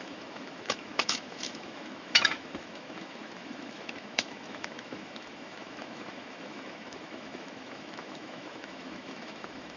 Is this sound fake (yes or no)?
yes